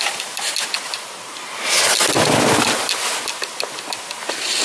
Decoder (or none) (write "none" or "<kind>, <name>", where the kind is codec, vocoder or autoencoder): none